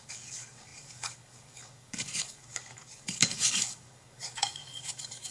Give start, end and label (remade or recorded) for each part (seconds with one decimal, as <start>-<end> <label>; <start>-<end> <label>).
0.0-5.3 remade